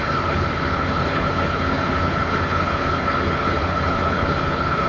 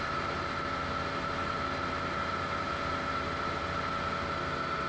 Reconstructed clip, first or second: first